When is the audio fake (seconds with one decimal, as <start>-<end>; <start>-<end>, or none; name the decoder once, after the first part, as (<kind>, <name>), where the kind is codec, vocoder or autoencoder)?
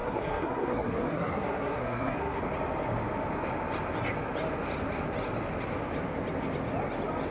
0.0-2.4 (codec, SNAC)